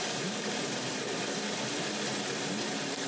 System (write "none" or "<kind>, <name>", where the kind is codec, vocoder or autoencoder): none